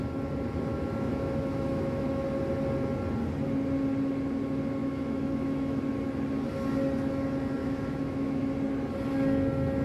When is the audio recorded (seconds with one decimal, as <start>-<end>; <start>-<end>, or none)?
0.0-0.7; 2.2-4.8; 5.8-7.6; 8.4-9.8